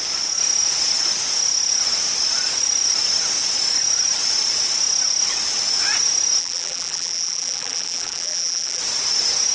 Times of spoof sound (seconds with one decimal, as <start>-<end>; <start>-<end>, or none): 6.4-8.8